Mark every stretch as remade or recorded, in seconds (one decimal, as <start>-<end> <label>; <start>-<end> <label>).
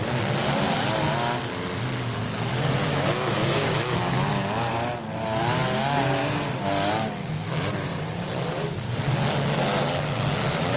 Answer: 0.0-7.9 recorded; 7.9-9.0 remade; 9.0-10.8 recorded